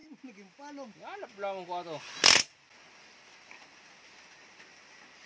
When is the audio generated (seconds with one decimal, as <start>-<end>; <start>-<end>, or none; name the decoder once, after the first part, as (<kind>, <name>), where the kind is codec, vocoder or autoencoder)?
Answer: none